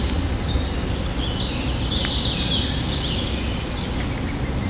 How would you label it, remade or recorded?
recorded